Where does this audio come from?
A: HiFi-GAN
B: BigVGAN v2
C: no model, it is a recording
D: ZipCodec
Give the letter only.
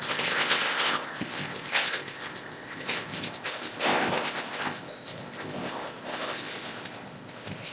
D